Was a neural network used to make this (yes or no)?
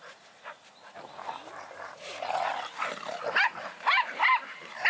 yes